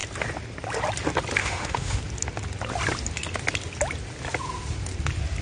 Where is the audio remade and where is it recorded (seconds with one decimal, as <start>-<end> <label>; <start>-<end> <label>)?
0.0-1.4 recorded; 1.4-2.0 remade; 2.0-5.4 recorded